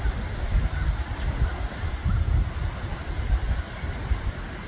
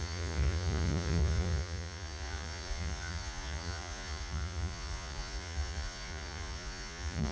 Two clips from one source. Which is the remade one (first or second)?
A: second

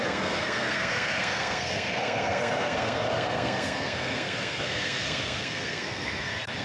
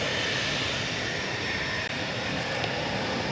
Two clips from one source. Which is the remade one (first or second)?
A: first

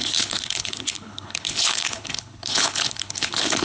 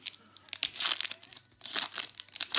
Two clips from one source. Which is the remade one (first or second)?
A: first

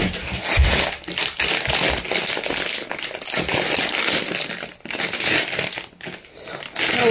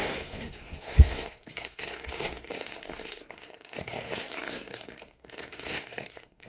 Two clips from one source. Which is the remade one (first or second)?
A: second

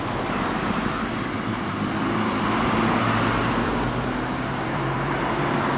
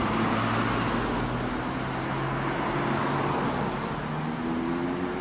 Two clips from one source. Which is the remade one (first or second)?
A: first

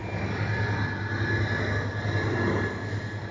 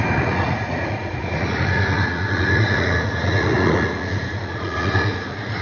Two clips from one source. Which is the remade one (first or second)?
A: second